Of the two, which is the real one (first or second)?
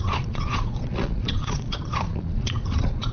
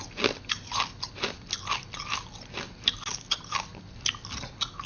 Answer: second